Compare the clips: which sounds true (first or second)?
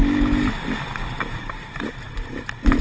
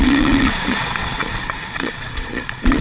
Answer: first